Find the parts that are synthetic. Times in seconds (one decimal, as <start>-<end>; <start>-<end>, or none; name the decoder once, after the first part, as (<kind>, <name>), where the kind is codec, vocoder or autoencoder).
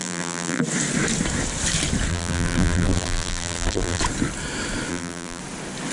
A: 0.0-0.6 (vocoder, BigVGAN v2); 2.1-4.0; 4.9-5.4